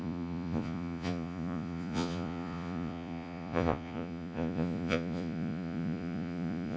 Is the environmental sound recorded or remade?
remade